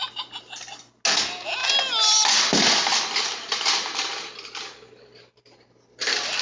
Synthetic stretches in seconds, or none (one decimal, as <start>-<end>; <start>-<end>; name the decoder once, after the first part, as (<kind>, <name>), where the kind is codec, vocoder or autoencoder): none